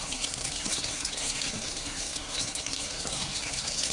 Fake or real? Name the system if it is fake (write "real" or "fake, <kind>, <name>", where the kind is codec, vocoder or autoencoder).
fake, codec, SNAC